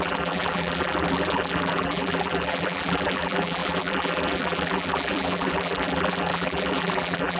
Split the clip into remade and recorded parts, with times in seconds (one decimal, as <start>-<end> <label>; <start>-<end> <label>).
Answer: 0.0-7.4 remade